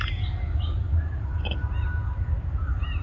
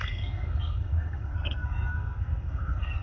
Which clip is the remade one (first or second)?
second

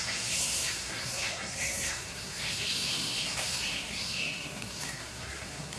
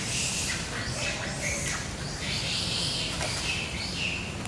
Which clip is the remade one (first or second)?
first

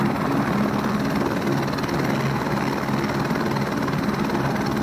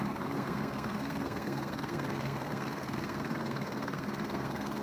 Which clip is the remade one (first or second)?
second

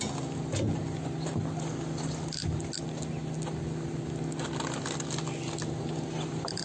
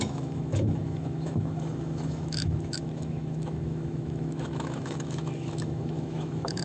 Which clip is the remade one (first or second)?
second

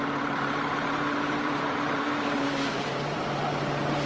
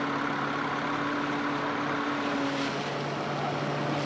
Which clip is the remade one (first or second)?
first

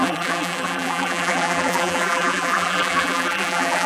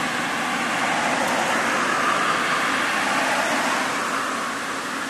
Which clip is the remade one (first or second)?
first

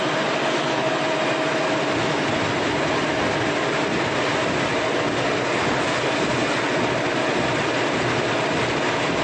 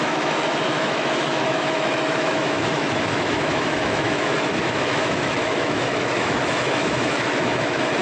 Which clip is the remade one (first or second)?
second